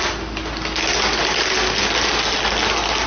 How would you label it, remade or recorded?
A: recorded